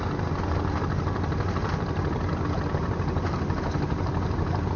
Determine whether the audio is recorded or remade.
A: recorded